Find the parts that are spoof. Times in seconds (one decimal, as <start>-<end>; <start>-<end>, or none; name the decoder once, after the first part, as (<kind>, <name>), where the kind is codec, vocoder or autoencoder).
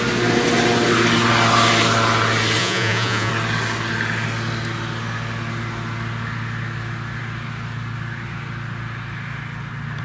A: 2.6-3.3 (vocoder, Vocos)